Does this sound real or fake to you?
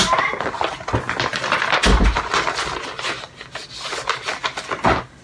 real